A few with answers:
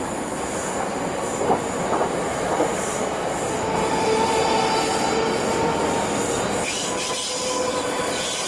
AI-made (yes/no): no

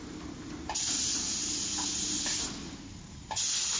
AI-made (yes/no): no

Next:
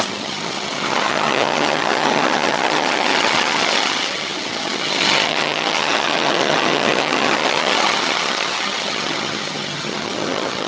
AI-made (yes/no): yes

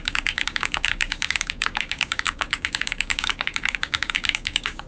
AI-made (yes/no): yes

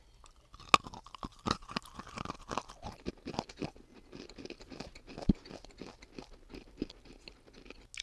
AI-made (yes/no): no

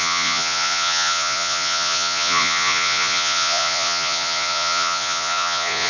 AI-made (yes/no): yes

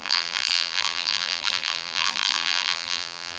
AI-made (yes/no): yes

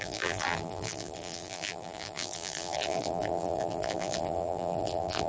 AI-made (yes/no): yes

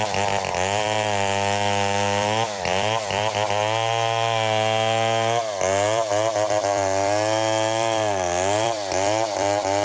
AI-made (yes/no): yes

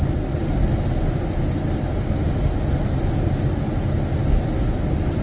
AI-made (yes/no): no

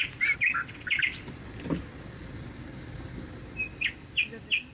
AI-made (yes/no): no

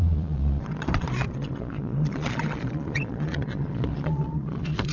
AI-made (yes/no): yes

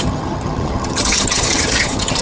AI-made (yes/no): yes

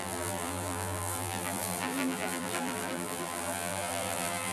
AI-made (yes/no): yes